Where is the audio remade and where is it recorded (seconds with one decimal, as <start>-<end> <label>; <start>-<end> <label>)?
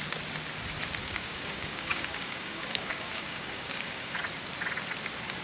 0.0-1.0 recorded; 1.0-4.2 remade; 4.2-5.4 recorded